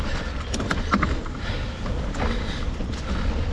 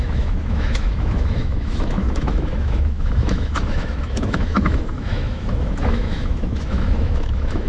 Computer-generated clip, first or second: second